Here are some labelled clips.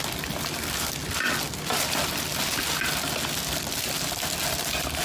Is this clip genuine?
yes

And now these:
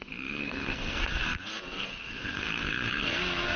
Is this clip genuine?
no